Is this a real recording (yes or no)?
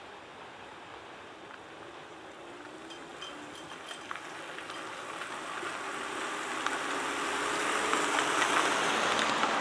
yes